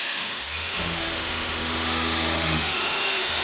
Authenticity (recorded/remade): remade